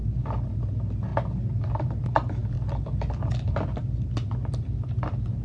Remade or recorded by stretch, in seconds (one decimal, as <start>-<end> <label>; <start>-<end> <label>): 0.0-5.4 recorded